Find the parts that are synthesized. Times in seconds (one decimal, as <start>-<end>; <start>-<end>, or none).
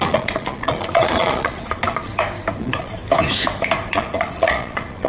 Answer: 0.0-2.1; 2.6-3.0; 3.9-5.1